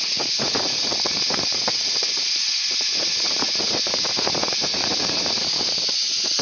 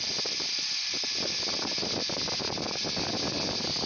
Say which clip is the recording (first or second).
second